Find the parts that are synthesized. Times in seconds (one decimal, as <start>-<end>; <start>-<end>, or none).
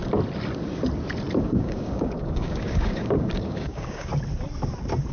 1.4-4.1